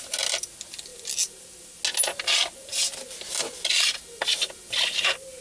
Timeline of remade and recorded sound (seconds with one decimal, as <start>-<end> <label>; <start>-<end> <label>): 0.0-5.4 recorded